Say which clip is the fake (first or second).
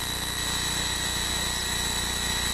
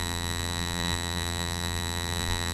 second